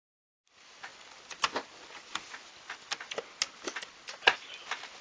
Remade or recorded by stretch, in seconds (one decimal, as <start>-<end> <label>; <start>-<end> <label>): 0.0-5.0 recorded